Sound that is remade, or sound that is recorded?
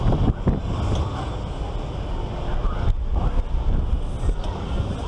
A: recorded